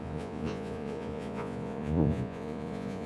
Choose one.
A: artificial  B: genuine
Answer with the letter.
A